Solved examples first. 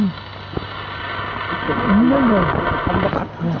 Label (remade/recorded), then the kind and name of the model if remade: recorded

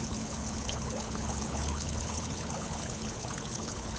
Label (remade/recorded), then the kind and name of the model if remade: remade, codec, HILCodec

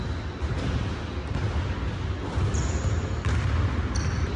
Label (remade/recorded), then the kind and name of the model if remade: recorded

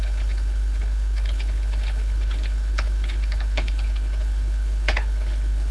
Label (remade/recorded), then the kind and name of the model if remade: remade, codec, HILCodec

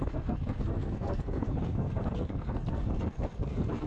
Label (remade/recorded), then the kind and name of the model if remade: remade, codec, SNAC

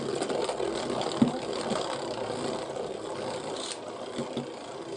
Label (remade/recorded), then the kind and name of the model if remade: recorded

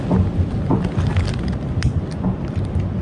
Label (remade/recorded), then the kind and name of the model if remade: recorded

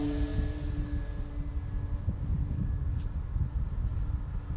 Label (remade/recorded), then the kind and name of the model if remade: recorded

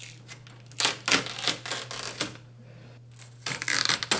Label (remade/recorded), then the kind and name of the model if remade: recorded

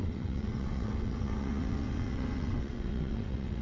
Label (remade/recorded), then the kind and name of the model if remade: remade, vocoder, WaveNeXt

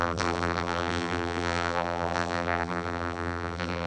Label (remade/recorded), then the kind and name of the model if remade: remade, vocoder, BigVGAN v2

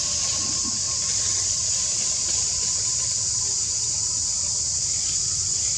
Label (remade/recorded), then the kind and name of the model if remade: recorded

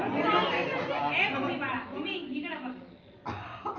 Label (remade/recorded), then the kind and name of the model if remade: recorded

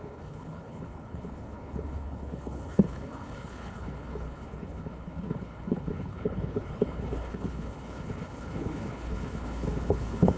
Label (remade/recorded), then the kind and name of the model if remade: remade, codec, HILCodec